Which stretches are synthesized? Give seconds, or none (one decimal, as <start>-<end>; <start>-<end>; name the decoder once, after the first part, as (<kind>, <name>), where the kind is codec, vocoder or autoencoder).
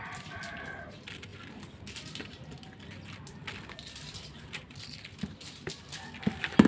none